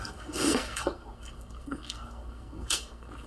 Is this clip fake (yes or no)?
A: yes